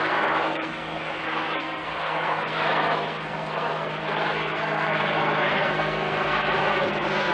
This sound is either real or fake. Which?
fake